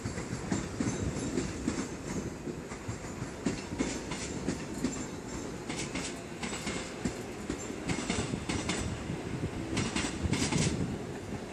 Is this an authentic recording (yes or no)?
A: yes